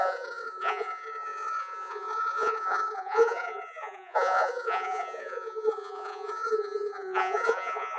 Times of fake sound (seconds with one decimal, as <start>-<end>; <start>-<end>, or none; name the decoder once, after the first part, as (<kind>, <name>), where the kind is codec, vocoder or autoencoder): 0.0-8.0 (vocoder, Vocos)